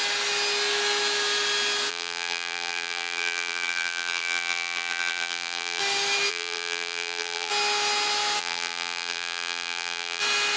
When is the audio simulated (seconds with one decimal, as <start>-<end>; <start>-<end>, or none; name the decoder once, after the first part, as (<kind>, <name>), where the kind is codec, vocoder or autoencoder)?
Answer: 1.9-5.8 (vocoder, BigVGAN v2); 6.3-7.5; 8.4-10.2